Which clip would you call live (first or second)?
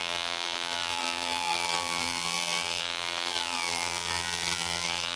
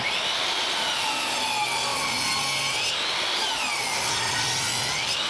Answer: second